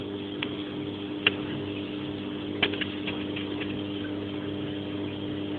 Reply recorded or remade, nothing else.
recorded